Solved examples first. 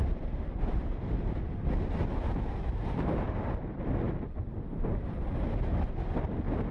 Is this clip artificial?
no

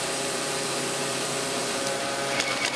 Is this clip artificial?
yes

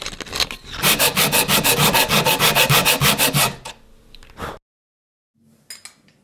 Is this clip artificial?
no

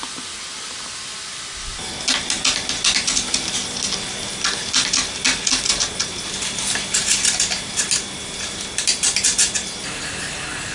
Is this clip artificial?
no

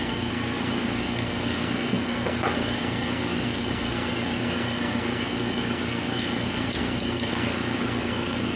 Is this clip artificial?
yes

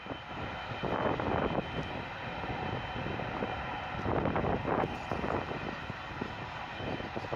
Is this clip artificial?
no